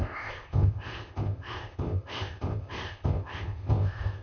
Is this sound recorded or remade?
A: remade